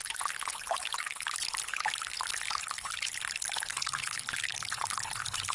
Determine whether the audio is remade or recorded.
remade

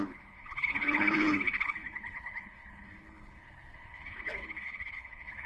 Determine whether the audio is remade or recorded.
remade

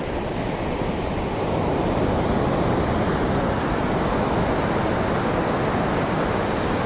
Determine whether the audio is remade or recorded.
recorded